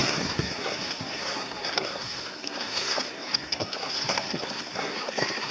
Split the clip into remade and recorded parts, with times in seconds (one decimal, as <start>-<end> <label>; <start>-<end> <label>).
0.0-5.5 remade